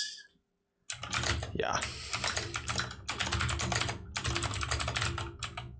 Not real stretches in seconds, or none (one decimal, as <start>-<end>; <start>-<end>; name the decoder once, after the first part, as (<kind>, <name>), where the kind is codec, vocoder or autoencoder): none